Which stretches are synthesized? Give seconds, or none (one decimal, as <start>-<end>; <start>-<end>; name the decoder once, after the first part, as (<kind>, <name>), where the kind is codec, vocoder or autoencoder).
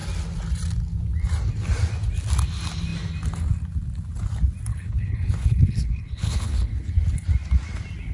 4.7-6.7 (codec, HILCodec)